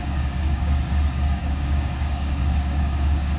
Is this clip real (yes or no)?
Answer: no